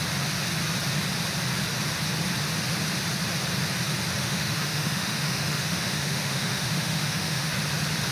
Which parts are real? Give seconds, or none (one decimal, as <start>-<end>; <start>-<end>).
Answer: 0.0-4.2; 7.5-8.1